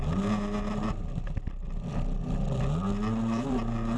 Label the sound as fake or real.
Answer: real